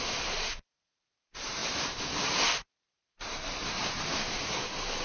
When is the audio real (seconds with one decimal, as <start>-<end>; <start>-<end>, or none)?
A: none